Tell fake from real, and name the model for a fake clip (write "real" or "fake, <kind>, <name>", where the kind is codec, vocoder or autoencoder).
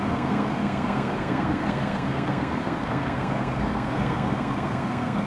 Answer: fake, codec, SNAC